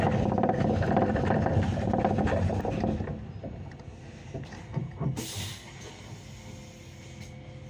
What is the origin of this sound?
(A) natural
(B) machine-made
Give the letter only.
A